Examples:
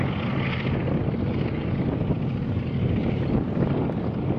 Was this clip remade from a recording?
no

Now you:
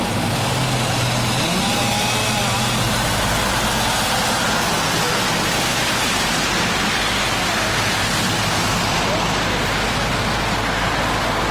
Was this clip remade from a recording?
no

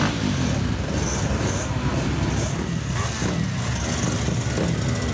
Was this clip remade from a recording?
no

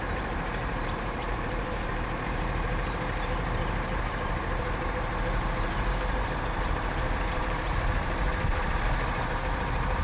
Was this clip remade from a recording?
yes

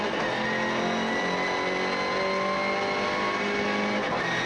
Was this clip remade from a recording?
no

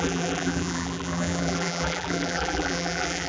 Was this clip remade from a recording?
yes